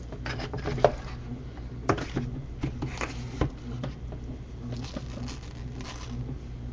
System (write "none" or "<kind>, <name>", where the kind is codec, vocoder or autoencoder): none